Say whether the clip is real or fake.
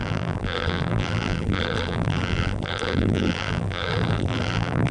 fake